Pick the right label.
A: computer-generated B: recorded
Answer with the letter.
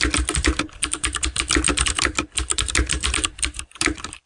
A